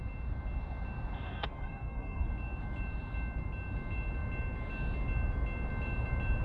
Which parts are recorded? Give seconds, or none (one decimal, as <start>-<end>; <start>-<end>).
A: 0.0-1.3; 2.3-6.4